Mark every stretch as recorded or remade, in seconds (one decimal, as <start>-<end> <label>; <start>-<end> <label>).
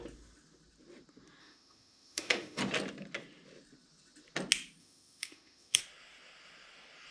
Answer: 0.0-1.4 recorded; 1.4-2.6 remade; 2.6-4.8 recorded; 4.8-5.8 remade; 5.8-7.1 recorded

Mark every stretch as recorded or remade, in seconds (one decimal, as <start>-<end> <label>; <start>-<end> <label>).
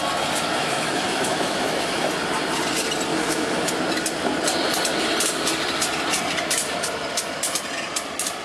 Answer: 0.0-0.6 recorded; 0.6-2.0 remade; 2.0-3.1 recorded; 3.1-3.7 remade; 3.7-8.4 recorded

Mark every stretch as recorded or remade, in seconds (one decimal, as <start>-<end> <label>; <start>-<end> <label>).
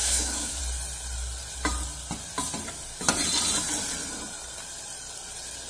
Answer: 0.0-0.6 remade; 0.6-5.7 recorded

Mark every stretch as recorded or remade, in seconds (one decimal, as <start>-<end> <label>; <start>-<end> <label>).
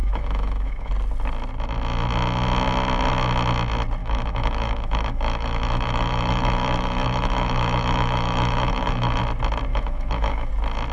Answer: 0.0-0.9 remade; 0.9-4.0 recorded; 4.0-9.2 remade; 9.2-9.7 recorded; 9.7-10.5 remade; 10.5-10.9 recorded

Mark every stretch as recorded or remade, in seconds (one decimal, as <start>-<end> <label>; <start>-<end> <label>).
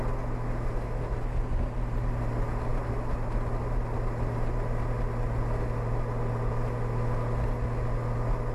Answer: 0.0-8.5 recorded